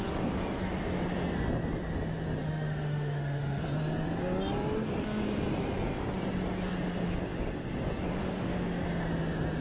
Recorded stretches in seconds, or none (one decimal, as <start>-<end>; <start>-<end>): 0.0-2.4; 3.6-8.2; 8.8-9.6